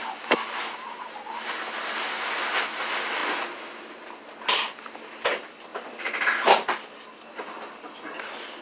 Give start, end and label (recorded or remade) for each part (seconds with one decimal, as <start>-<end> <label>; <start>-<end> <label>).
0.0-8.6 recorded